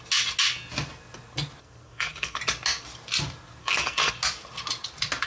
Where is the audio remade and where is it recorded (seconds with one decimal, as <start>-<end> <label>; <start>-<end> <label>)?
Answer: 0.0-1.6 recorded; 1.6-2.4 remade; 2.4-3.6 recorded; 3.6-4.1 remade; 4.1-5.3 recorded